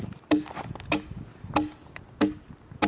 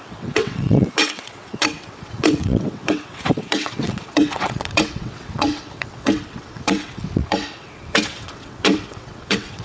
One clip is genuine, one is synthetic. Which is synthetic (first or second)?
second